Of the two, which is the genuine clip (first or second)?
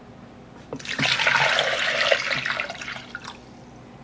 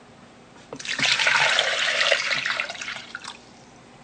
first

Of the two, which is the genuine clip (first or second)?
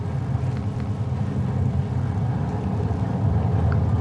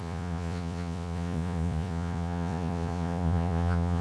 first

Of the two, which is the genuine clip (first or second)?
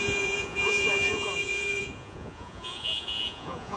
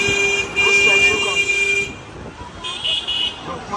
second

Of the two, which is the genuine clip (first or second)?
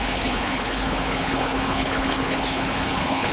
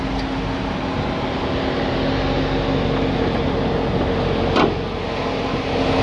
second